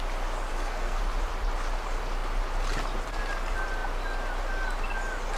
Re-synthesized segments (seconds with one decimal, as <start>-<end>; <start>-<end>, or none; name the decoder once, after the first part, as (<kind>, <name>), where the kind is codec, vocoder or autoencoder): 0.5-1.0 (codec, SNAC)